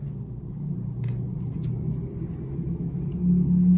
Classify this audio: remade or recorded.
recorded